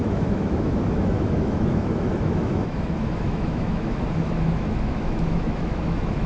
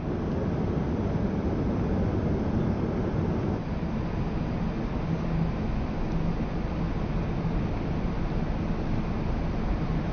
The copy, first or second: first